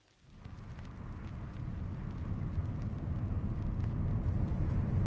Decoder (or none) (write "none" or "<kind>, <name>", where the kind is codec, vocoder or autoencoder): none